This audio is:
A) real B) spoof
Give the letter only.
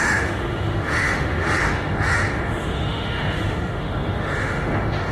B